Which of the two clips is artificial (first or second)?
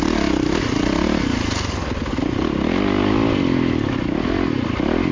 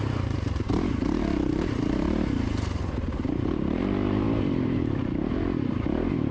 second